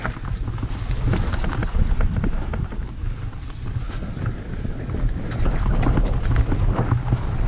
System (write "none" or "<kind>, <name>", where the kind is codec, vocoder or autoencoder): none